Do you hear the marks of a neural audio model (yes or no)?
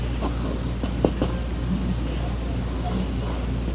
no